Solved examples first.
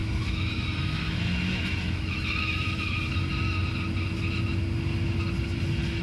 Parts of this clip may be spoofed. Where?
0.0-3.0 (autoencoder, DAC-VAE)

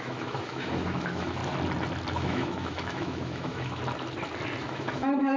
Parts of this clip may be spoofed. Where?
0.0-1.4 (autoencoder, DAC-VAE); 2.1-3.8; 4.6-5.4

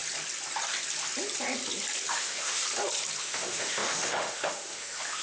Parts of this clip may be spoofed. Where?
2.1-2.6 (autoencoder, DAC-VAE); 3.2-5.2